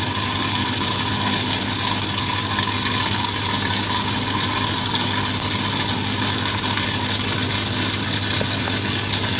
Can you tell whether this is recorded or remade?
recorded